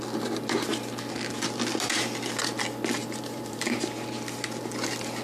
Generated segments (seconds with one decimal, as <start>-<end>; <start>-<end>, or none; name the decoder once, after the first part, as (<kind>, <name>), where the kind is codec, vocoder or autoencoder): 3.0-3.8 (vocoder, BigVGAN v2)